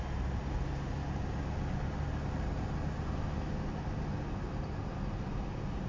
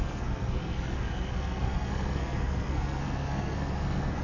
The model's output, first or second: second